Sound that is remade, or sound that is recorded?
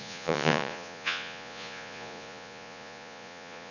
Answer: remade